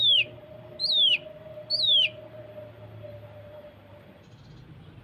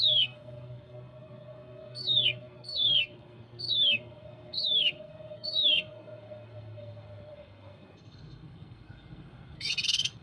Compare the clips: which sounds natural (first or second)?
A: first